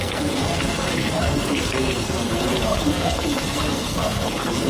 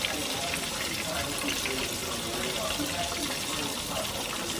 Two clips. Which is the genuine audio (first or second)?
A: second